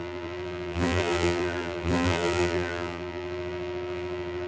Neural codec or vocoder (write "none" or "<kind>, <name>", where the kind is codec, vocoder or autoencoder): vocoder, BigVGAN v2